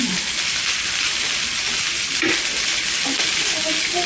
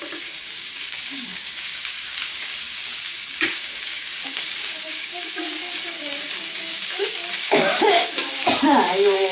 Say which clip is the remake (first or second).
second